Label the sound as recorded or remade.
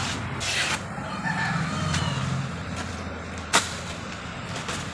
recorded